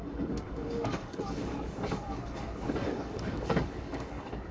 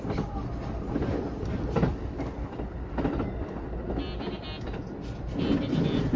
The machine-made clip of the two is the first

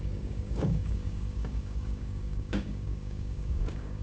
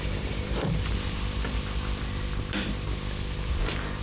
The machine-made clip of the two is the first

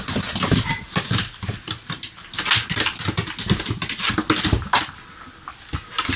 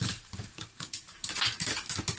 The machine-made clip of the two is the second